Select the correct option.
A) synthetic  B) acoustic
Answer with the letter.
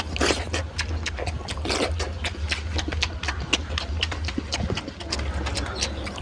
B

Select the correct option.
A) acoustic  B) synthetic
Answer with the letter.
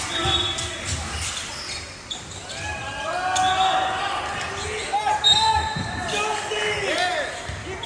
A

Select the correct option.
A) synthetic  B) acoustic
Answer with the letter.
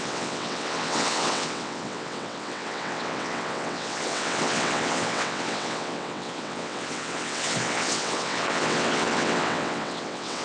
A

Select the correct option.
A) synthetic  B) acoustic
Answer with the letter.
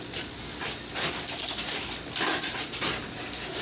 B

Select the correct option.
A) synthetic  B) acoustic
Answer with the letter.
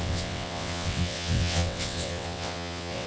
A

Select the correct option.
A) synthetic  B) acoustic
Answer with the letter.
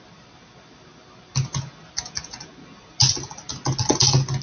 B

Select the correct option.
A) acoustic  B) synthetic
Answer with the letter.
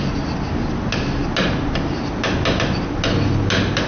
A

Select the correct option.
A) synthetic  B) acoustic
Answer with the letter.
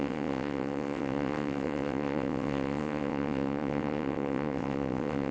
A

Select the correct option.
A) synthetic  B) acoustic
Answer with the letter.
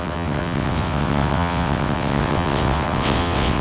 A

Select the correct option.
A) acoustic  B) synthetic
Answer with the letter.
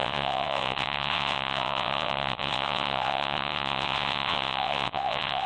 B